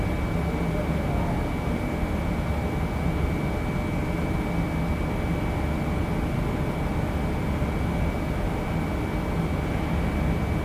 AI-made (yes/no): no